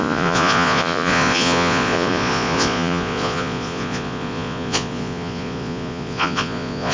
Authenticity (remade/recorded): remade